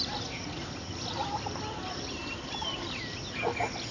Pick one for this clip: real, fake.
real